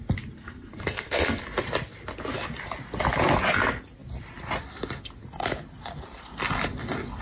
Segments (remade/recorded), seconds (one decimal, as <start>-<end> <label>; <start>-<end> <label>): 0.0-0.4 recorded; 0.4-1.4 remade; 1.4-7.2 recorded